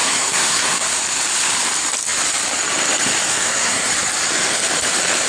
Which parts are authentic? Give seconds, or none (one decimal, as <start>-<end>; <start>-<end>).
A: 1.0-3.3; 3.9-5.3